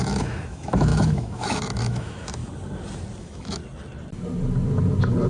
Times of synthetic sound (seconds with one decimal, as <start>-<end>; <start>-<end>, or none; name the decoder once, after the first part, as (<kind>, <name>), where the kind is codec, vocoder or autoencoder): 0.0-2.4 (autoencoder, DAC-VAE); 3.2-3.6